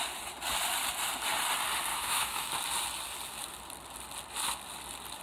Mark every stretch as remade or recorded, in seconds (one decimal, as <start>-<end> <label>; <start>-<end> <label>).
0.0-1.9 recorded; 1.9-2.5 remade; 2.5-5.2 recorded